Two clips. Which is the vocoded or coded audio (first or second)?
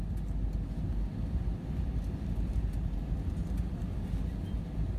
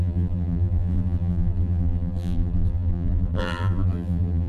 second